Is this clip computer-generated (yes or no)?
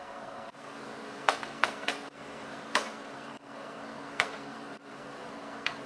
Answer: yes